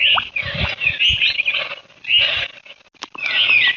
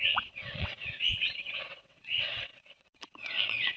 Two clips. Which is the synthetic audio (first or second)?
second